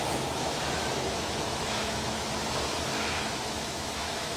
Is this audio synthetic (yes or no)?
yes